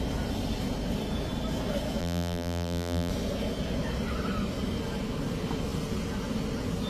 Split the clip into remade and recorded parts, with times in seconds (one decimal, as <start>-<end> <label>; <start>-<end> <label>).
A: 0.0-2.0 recorded; 2.0-3.1 remade; 3.1-6.9 recorded